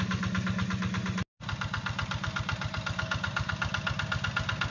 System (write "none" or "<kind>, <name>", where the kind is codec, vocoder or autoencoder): none